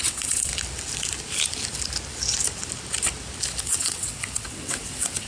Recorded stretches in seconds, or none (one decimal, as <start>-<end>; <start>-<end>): 0.5-3.6